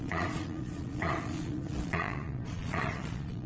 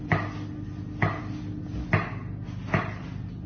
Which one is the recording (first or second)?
second